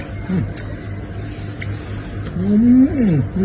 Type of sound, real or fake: real